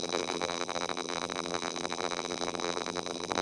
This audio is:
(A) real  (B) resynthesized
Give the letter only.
B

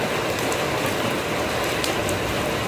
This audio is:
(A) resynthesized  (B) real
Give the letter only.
B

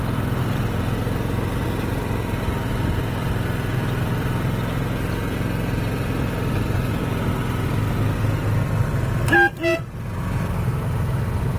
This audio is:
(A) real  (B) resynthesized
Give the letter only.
A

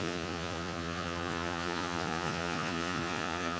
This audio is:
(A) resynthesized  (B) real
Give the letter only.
A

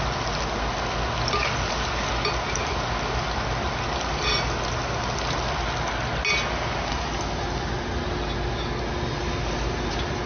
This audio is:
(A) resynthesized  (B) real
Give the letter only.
B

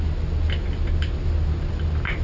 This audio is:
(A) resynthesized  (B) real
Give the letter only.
B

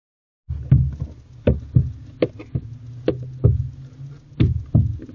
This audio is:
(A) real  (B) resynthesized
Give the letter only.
A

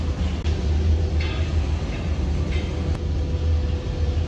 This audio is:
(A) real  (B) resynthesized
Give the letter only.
A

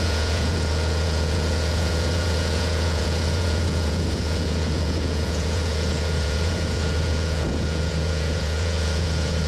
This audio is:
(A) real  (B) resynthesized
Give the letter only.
B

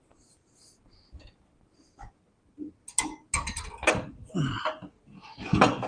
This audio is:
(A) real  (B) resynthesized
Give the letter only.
A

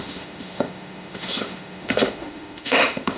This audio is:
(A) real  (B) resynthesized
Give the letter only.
B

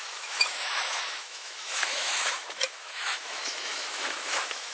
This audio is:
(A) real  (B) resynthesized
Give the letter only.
B